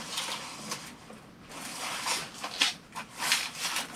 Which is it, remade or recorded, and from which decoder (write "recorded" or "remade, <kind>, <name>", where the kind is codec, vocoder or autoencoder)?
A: recorded